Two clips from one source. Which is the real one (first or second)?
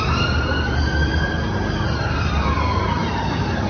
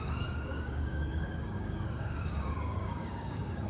first